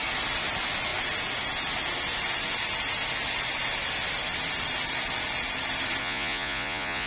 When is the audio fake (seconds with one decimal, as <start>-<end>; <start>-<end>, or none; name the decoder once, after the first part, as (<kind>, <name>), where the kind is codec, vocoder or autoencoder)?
6.0-7.1 (vocoder, Vocos)